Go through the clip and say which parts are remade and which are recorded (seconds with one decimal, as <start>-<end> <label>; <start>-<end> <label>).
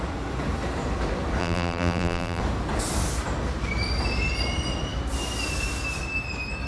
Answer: 0.0-1.4 recorded; 1.4-2.4 remade; 2.4-6.7 recorded